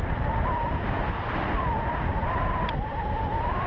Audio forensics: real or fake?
real